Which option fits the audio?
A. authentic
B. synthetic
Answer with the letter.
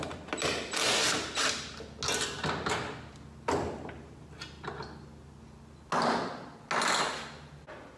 A